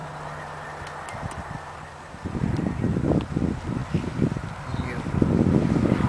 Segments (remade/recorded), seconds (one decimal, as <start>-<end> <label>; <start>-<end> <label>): 0.0-6.1 recorded